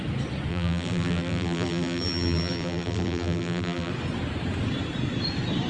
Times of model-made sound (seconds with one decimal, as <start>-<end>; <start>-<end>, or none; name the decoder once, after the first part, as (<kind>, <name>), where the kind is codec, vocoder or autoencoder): 0.5-3.9 (vocoder, BigVGAN v2)